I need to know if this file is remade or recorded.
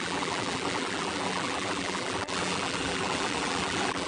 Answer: remade